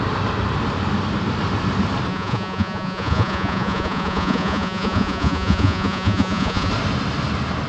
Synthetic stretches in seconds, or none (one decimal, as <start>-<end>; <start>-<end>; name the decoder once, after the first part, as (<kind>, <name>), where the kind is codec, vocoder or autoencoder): 2.1-6.7 (vocoder, Vocos)

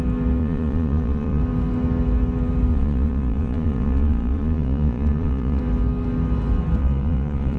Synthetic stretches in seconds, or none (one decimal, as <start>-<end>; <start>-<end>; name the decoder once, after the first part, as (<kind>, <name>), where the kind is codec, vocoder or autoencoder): 0.4-1.4 (vocoder, Vocos); 2.7-5.6; 6.8-7.6

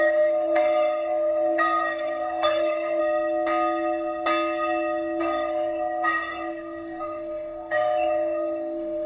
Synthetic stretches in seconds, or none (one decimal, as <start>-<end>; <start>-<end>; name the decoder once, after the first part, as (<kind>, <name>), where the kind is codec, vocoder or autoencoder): 0.0-3.0 (codec, SNAC); 5.2-9.1

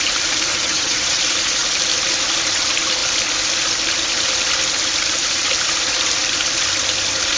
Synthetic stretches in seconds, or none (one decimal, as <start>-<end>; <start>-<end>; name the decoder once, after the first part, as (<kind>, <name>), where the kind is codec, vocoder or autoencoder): 0.5-1.2 (vocoder, HiFi-GAN)

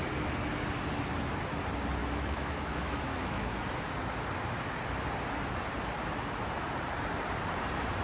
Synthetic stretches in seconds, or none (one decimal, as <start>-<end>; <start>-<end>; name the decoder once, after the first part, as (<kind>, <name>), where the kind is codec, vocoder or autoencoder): 2.0-3.6 (autoencoder, DAC-VAE)

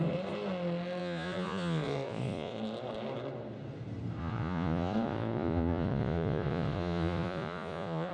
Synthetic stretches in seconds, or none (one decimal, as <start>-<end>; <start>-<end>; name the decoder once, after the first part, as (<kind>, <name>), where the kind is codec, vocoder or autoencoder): 1.0-2.6 (vocoder, Vocos); 4.2-8.1

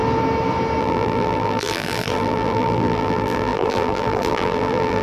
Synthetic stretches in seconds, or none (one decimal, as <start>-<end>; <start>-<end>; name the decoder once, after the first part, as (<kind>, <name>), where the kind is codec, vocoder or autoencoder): 0.8-5.0 (vocoder, BigVGAN v2)

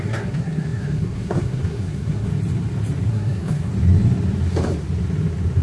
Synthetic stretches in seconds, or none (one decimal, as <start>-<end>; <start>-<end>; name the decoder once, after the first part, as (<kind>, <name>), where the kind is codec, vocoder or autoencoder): 0.0-2.3 (codec, SNAC); 3.1-3.7